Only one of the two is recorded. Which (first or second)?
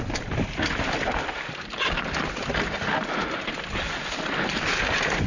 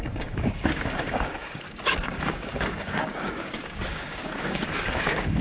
first